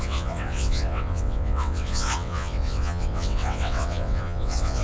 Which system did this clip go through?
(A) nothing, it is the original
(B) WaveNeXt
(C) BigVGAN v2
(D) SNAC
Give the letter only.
B